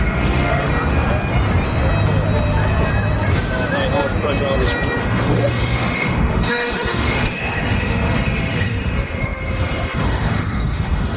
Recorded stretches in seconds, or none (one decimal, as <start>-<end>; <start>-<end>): 0.7-5.0